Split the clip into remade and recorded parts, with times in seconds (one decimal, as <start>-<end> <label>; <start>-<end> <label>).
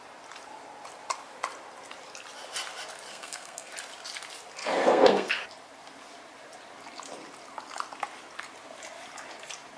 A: 0.0-3.1 recorded; 3.1-3.7 remade; 3.7-4.6 recorded; 4.6-5.3 remade; 5.3-9.8 recorded